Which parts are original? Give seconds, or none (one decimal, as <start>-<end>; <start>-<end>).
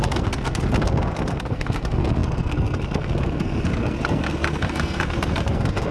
none